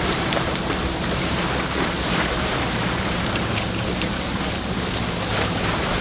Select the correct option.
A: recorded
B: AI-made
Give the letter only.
B